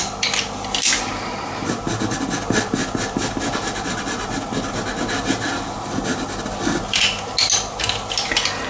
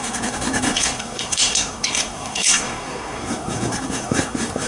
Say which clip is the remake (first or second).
second